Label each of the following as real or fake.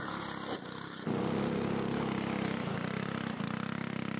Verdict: real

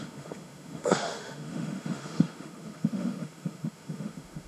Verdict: fake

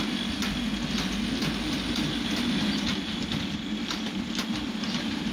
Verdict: real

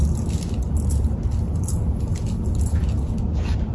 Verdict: real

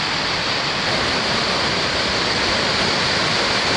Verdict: fake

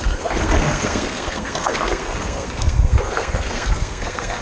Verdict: fake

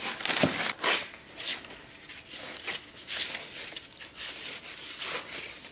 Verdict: real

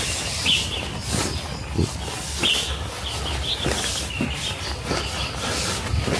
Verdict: real